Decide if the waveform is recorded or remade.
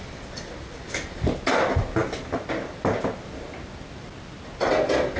recorded